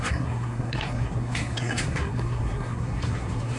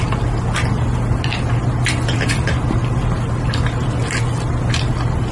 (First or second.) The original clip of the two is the second